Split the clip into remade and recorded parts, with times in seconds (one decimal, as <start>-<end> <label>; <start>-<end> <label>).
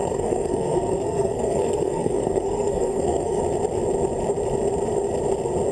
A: 0.0-3.4 remade; 3.4-5.7 recorded